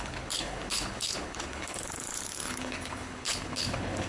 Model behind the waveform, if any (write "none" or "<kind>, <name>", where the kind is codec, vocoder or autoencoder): codec, HILCodec